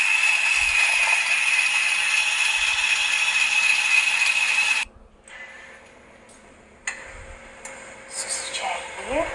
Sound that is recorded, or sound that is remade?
recorded